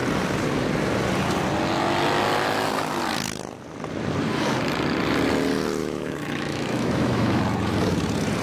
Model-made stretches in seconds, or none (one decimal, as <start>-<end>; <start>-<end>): 5.8-7.4